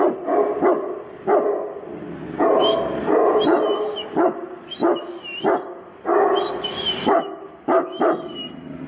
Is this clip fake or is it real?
real